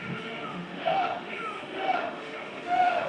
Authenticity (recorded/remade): remade